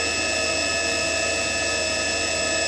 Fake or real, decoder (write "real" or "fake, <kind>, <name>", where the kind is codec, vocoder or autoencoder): real